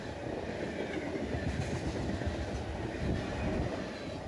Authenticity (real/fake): real